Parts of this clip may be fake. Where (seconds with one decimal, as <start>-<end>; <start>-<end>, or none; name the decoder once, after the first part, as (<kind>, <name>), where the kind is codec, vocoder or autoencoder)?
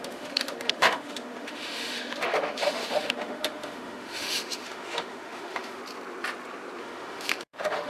0.0-5.8 (autoencoder, DAC-VAE); 6.8-7.9